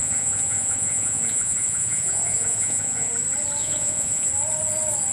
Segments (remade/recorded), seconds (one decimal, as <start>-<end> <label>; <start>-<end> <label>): 0.0-3.1 remade; 3.1-3.6 recorded; 3.6-4.3 remade; 4.3-5.1 recorded